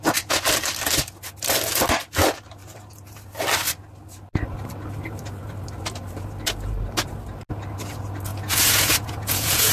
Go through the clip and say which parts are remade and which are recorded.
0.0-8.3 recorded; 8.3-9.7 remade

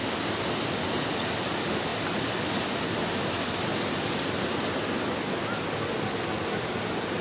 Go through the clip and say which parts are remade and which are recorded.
0.0-7.2 recorded

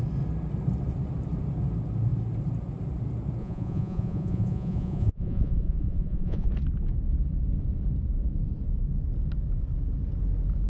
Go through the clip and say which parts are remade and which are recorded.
0.0-3.4 recorded; 3.4-6.5 remade; 6.5-10.7 recorded